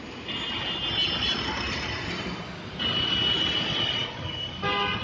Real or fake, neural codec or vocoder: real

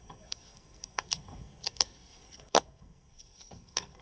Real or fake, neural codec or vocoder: fake, codec, SNAC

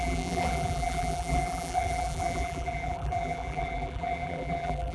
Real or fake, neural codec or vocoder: fake, vocoder, BigVGAN v2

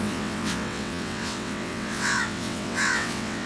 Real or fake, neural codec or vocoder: fake, vocoder, WaveNeXt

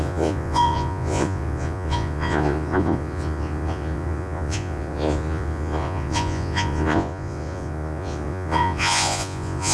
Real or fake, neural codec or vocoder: fake, vocoder, Vocos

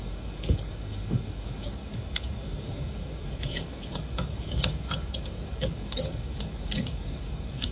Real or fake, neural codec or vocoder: fake, codec, DAC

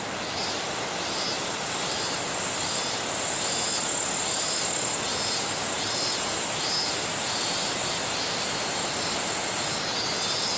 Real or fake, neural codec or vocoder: real